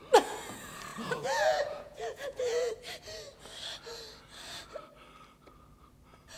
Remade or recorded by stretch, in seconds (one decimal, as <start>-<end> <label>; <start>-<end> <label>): 0.0-0.9 recorded; 0.9-2.7 remade; 2.7-6.4 recorded